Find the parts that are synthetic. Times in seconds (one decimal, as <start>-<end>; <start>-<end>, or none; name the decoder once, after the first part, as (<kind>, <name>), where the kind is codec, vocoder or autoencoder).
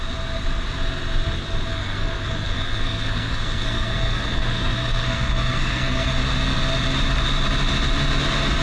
1.7-6.1 (codec, SNAC)